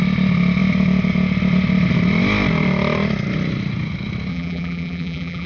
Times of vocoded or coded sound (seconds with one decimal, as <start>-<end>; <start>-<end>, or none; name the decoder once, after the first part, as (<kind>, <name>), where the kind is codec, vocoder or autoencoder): 4.3-5.5 (vocoder, BigVGAN v2)